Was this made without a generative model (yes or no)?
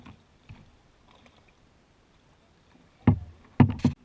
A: yes